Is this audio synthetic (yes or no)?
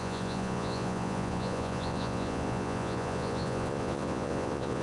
yes